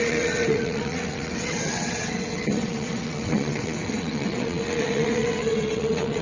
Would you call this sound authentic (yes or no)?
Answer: no